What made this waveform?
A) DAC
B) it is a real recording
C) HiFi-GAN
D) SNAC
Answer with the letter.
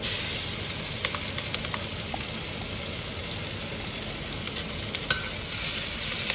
B